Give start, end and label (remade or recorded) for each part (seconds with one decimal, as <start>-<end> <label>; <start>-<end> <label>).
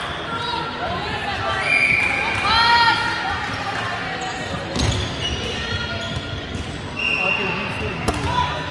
0.0-8.7 recorded